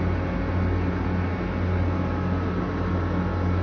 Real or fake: real